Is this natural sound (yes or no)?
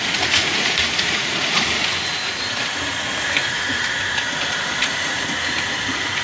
no